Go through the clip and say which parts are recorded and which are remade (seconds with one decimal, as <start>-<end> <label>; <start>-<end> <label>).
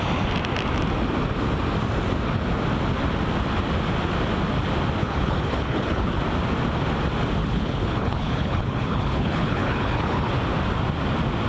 0.0-5.0 recorded; 5.0-6.2 remade; 6.2-7.4 recorded; 7.4-10.3 remade; 10.3-11.5 recorded